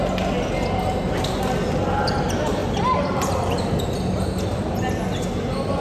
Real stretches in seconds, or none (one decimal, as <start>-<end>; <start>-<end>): 0.0-2.6; 3.5-5.8